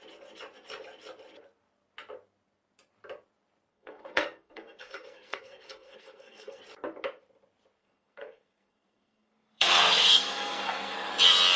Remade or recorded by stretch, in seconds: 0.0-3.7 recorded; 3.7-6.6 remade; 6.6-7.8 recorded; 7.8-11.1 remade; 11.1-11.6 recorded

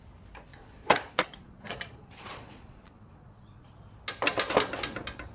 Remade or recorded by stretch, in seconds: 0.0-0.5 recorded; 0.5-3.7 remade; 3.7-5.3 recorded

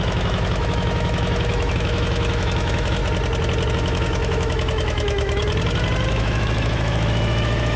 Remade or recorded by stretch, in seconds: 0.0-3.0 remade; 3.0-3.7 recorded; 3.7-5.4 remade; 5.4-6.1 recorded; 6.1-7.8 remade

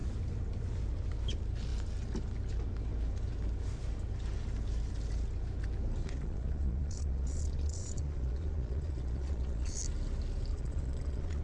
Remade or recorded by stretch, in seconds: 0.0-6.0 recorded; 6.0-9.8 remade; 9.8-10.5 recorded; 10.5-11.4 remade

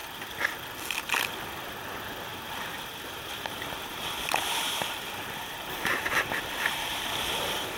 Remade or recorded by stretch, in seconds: 0.0-2.3 recorded; 2.3-7.0 remade; 7.0-7.8 recorded

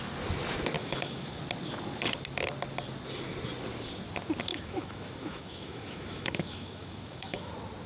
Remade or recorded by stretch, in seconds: 0.0-0.8 recorded; 0.8-1.4 remade; 1.4-4.5 recorded; 4.5-7.5 remade; 7.5-7.9 recorded

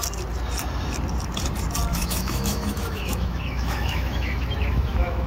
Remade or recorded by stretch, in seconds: 0.0-1.9 recorded; 1.9-5.3 remade